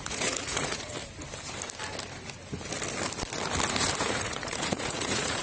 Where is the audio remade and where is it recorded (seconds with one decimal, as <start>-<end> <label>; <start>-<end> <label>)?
0.0-0.9 remade; 0.9-4.1 recorded; 4.1-5.4 remade